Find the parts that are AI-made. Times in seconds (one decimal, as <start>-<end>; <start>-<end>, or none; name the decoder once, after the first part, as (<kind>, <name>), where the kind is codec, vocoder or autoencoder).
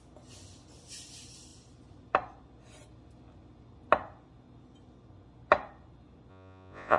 6.3-7.0 (vocoder, Vocos)